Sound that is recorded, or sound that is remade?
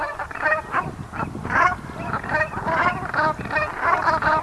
recorded